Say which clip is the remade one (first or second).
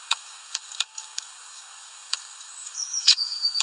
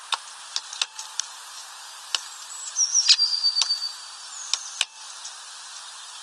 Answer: first